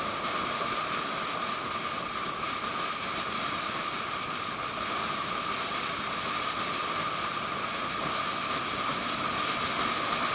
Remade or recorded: recorded